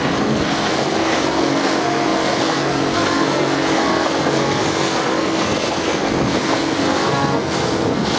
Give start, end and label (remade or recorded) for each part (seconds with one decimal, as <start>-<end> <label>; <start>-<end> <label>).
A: 0.0-8.2 remade